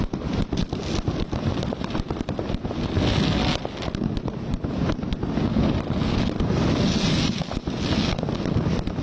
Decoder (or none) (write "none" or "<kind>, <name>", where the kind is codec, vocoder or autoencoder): none